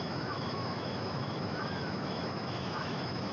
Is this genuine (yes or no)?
no